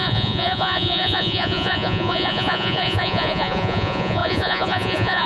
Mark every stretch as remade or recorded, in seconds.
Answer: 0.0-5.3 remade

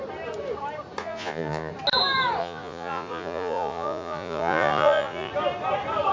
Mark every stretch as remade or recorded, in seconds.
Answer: 0.0-1.0 recorded; 1.0-1.7 remade; 1.7-2.4 recorded; 2.4-5.3 remade; 5.3-6.1 recorded

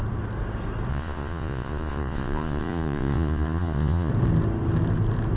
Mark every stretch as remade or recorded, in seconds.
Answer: 0.0-0.9 recorded; 0.9-4.1 remade; 4.1-5.4 recorded

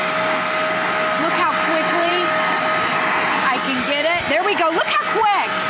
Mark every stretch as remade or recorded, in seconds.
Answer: 0.0-5.7 recorded

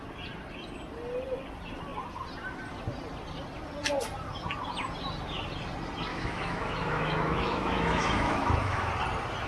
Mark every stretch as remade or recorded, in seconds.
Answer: 0.0-6.1 recorded; 6.1-8.9 remade; 8.9-9.5 recorded

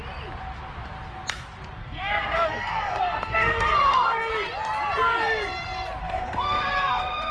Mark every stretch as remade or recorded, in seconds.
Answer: 0.0-1.8 recorded; 1.8-4.3 remade; 4.3-6.0 recorded; 6.0-7.3 remade

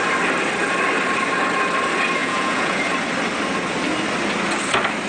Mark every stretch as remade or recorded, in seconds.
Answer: 0.0-2.2 recorded; 2.2-2.8 remade; 2.8-5.1 recorded